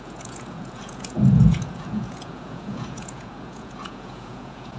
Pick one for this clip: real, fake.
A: fake